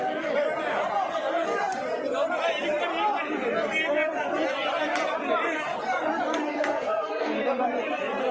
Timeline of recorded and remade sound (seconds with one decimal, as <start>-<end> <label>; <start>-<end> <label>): 0.0-6.5 recorded; 6.5-7.6 remade; 7.6-8.3 recorded